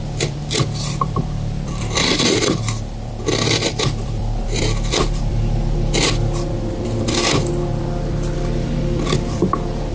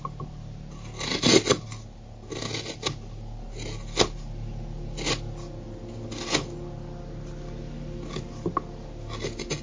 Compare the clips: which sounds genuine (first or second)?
second